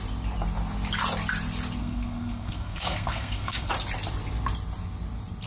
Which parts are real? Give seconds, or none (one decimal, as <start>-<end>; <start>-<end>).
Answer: 0.0-1.8; 3.7-5.5